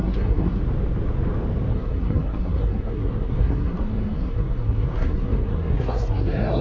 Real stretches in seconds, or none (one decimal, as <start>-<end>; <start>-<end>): 0.6-1.7